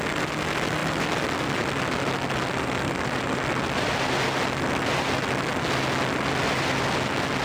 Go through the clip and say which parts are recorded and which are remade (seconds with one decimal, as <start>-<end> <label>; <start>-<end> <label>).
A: 0.0-7.4 recorded